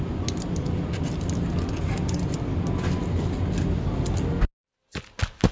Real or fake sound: real